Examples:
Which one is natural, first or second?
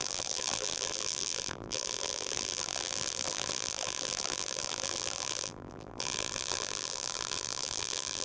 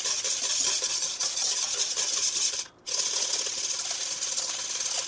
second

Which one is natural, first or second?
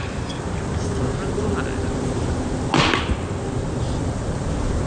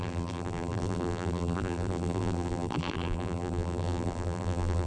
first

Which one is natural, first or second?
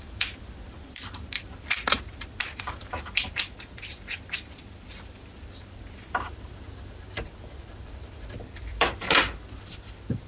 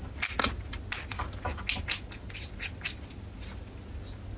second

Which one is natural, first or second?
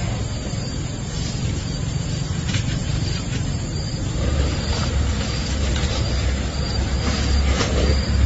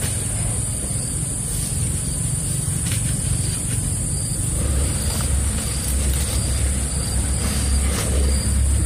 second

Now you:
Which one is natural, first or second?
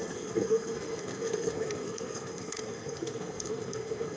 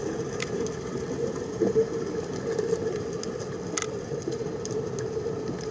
second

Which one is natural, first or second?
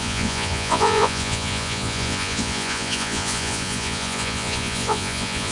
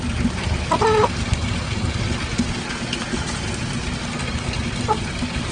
second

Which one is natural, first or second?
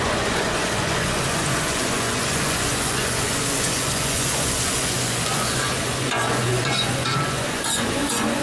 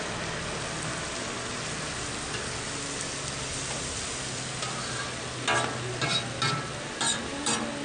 second